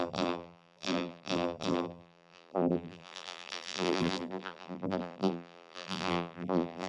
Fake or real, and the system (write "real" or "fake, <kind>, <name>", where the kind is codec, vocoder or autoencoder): fake, vocoder, BigVGAN v2